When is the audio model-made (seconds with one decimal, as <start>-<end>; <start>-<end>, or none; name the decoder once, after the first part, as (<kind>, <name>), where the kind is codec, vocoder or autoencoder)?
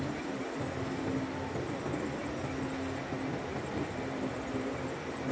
3.5-4.8 (vocoder, BigVGAN v2)